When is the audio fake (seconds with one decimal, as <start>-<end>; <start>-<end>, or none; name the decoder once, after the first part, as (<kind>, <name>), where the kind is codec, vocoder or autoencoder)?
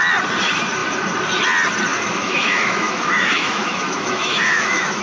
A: 1.9-5.0 (autoencoder, DAC-VAE)